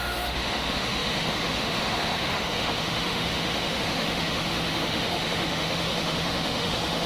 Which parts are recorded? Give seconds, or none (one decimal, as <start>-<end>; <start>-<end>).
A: none

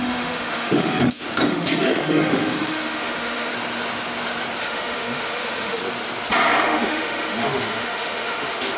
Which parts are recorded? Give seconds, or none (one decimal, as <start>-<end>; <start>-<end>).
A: 3.5-4.6; 5.8-6.6

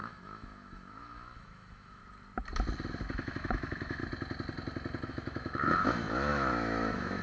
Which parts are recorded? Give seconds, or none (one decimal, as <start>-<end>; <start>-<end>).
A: 2.0-3.0; 4.0-5.1

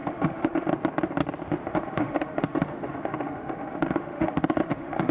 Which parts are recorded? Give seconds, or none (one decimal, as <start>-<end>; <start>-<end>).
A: 0.7-1.7

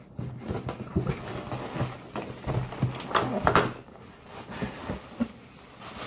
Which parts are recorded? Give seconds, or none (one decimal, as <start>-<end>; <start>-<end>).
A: 0.0-6.1

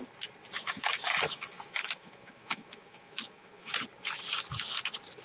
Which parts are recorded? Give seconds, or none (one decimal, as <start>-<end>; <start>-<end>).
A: 0.0-0.6; 3.7-5.2

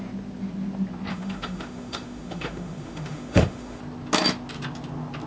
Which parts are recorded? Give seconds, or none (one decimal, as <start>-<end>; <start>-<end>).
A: 0.0-1.1; 3.8-5.3

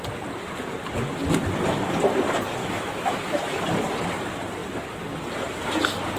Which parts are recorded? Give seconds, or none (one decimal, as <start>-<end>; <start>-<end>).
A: 0.0-2.6; 3.6-6.2